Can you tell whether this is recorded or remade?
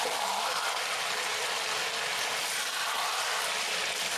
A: recorded